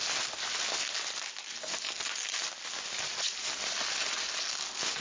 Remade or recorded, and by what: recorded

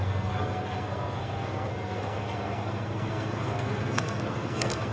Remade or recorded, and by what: remade, codec, SNAC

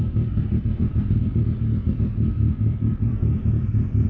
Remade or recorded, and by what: remade, codec, SNAC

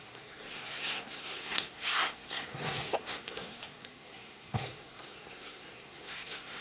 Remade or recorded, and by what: remade, codec, SNAC